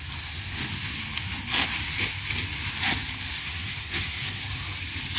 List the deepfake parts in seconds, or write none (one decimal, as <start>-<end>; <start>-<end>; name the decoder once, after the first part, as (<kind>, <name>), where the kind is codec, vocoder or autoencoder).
3.4-4.4 (codec, SNAC)